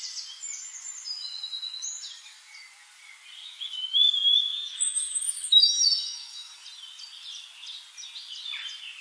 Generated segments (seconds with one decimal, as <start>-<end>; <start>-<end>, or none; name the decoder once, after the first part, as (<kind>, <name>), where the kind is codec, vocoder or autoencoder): 3.4-6.5 (autoencoder, DAC-VAE)